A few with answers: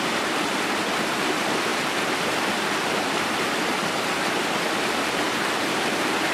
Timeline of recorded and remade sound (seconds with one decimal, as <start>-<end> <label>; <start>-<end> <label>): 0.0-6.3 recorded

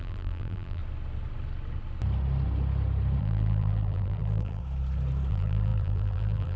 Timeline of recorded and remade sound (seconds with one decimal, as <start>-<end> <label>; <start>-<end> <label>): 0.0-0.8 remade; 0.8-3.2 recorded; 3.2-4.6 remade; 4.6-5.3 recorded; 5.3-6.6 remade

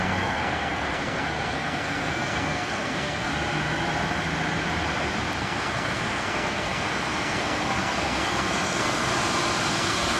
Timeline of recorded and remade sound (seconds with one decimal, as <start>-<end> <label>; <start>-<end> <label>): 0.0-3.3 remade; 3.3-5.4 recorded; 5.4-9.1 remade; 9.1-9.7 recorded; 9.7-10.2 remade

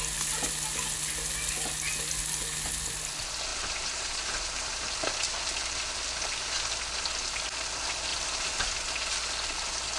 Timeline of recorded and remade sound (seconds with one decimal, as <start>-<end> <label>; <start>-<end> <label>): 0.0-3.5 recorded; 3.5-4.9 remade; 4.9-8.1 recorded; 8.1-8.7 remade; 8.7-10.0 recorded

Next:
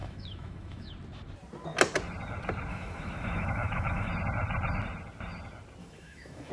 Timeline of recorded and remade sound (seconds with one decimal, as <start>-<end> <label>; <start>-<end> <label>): 0.0-0.9 remade; 0.9-2.7 recorded; 2.7-4.1 remade; 4.1-5.8 recorded; 5.8-6.5 remade

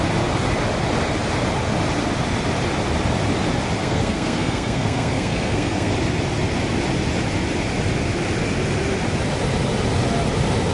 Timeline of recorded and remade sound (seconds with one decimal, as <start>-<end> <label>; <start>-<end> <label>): 0.0-3.8 recorded; 3.8-5.9 remade; 5.9-10.7 recorded